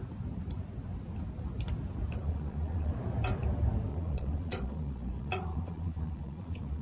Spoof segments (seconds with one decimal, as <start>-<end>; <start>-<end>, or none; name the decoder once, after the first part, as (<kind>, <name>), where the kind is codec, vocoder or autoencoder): 2.2-2.9 (vocoder, Vocos); 3.9-6.8